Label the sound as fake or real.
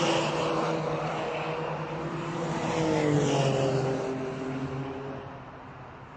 real